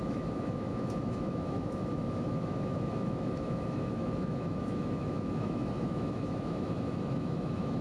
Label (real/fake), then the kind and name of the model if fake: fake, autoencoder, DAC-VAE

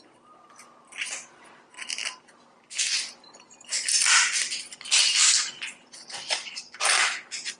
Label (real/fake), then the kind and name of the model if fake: real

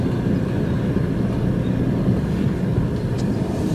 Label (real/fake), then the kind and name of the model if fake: real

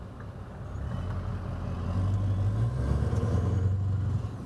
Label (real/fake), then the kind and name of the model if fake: real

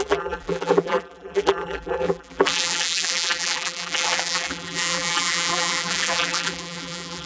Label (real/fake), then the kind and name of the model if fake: fake, vocoder, BigVGAN v2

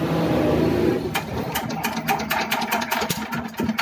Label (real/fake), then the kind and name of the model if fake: real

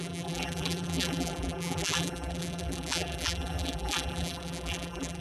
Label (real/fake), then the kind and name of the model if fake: fake, vocoder, BigVGAN v2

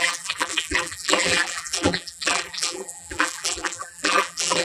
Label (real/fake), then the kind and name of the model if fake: fake, vocoder, BigVGAN v2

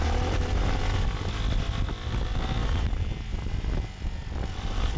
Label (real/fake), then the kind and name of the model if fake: real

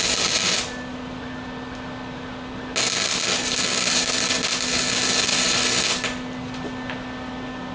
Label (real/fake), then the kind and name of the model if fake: real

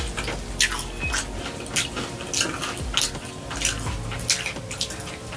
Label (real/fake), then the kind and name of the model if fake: real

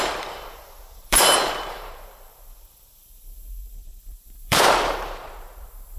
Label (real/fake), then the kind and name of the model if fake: fake, vocoder, BigVGAN v2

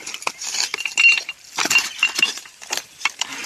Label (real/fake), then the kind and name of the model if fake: fake, vocoder, BigVGAN v2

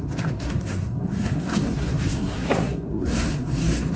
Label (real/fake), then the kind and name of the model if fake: fake, codec, SNAC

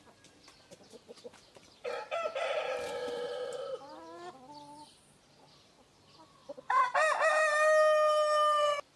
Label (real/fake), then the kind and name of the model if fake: real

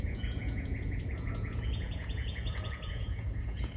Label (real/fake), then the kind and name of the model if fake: fake, vocoder, Vocos